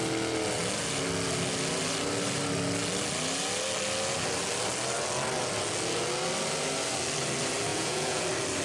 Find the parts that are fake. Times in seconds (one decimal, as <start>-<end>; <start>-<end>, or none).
7.7-8.2